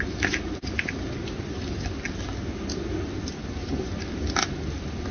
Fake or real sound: real